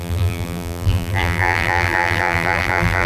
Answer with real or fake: fake